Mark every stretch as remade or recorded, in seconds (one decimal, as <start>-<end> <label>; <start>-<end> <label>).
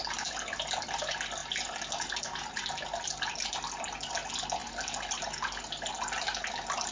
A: 0.0-6.9 recorded